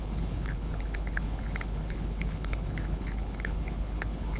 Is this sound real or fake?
fake